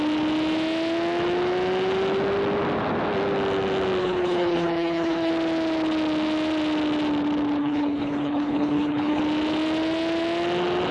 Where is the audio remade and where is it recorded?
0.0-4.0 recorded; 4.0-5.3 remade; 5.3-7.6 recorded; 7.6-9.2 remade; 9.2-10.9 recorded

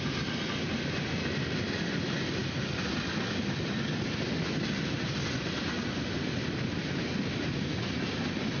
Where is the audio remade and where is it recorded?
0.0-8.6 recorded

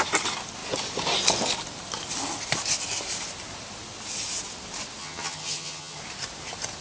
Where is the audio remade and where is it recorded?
0.0-5.0 recorded; 5.0-6.0 remade; 6.0-6.8 recorded